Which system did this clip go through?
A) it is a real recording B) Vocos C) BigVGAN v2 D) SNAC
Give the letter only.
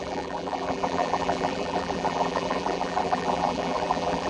C